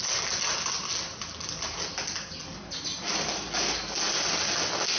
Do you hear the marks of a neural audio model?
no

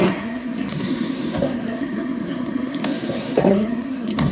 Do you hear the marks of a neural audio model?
yes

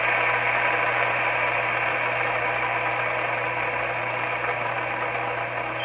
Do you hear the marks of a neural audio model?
no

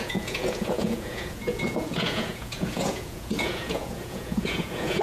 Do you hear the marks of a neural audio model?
yes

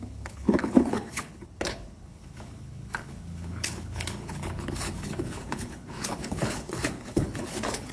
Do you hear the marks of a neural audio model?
yes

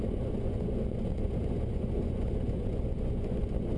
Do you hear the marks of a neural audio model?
yes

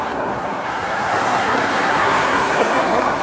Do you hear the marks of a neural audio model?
yes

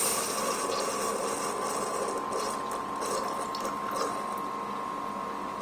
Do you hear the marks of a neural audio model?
no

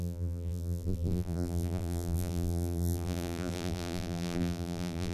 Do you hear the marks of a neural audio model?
yes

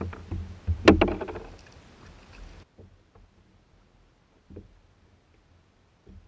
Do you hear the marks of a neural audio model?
no